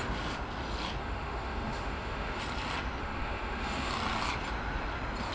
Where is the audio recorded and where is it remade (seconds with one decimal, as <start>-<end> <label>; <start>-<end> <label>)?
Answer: 0.0-1.0 recorded; 1.0-2.4 remade; 2.4-3.0 recorded; 3.0-3.9 remade; 3.9-5.3 recorded